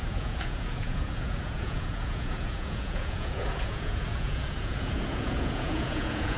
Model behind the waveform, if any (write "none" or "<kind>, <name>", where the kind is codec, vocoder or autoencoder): vocoder, Vocos